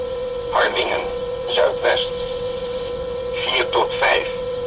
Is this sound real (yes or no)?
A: no